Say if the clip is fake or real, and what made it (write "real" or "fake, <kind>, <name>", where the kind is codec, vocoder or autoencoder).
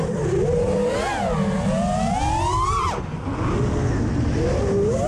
real